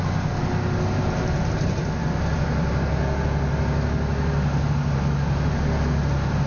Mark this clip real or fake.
real